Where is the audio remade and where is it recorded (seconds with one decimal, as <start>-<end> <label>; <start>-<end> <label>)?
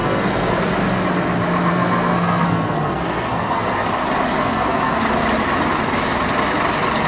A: 0.0-0.6 remade; 0.6-1.7 recorded; 1.7-3.9 remade; 3.9-4.3 recorded; 4.3-5.1 remade; 5.1-7.1 recorded